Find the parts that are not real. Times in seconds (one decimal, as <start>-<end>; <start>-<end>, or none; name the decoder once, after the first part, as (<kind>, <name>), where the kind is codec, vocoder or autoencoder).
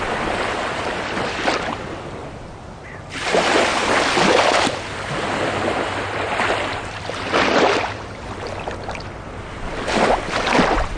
none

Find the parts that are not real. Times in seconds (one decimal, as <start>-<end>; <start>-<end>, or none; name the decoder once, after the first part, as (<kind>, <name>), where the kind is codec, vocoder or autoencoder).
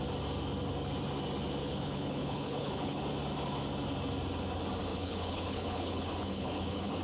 1.6-3.0 (codec, HILCodec); 4.9-7.0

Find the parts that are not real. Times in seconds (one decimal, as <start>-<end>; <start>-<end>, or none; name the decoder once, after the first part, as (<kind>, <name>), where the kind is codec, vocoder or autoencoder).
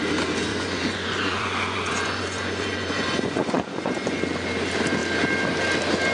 0.5-4.2 (vocoder, Vocos)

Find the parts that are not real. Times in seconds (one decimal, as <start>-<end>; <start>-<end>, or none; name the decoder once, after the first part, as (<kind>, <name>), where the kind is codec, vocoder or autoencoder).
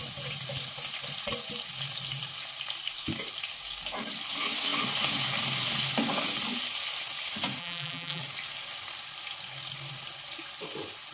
7.6-8.2 (vocoder, BigVGAN v2)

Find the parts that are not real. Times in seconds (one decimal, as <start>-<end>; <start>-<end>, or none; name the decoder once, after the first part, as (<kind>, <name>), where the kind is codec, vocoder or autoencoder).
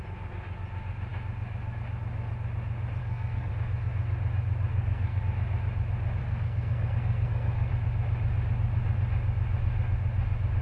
3.0-3.5 (codec, SNAC); 4.7-5.2; 6.2-7.7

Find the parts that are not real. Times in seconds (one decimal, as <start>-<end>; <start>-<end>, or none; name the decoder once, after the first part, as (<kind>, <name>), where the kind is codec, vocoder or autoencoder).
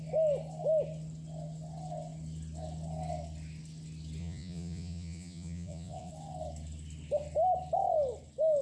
4.2-6.1 (vocoder, Vocos)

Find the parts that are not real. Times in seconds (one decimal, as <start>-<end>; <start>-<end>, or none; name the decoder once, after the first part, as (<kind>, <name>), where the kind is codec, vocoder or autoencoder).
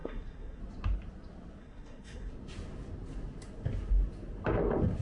0.0-0.6 (codec, SNAC); 1.6-2.3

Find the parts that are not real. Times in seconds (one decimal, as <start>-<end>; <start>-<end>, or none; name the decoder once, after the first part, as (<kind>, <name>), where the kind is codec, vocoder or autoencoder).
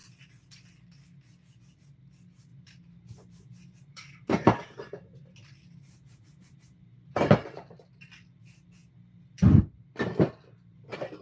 2.5-7.3 (vocoder, BigVGAN v2)